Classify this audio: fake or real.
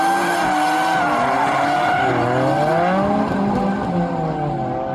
real